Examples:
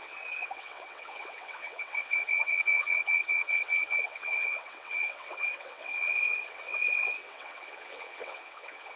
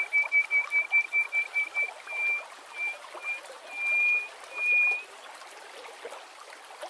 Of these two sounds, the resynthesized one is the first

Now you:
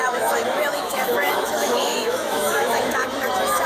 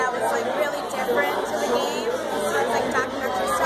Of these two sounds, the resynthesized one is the first